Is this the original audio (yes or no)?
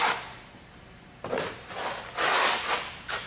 yes